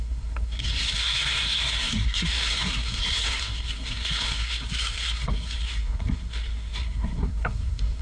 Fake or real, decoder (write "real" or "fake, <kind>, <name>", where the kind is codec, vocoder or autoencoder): fake, codec, SNAC